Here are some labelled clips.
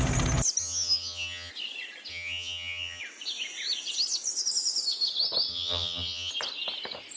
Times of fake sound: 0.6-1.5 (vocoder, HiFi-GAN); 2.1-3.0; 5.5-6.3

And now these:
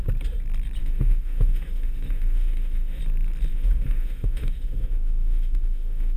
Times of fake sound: 0.8-3.0 (autoencoder, DAC-VAE); 3.5-6.2

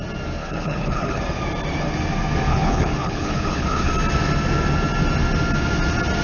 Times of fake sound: 0.4-1.2 (codec, HILCodec); 2.5-3.9

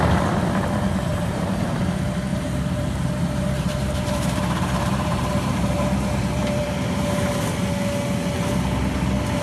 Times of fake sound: 1.1-1.8 (vocoder, BigVGAN v2); 2.3-7.3

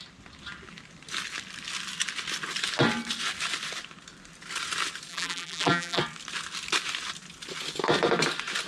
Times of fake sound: 5.1-6.0 (vocoder, BigVGAN v2)

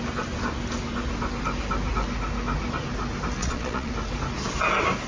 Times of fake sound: 3.4-3.9 (vocoder, Vocos)

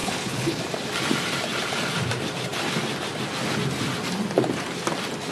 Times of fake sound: 0.0-0.6 (codec, HILCodec)

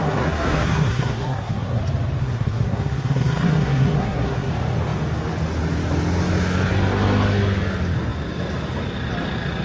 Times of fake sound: 0.0-1.8 (codec, SNAC); 2.2-4.5